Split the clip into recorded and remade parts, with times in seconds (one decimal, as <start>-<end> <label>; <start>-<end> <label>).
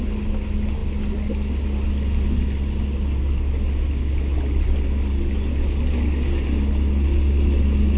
0.0-8.0 recorded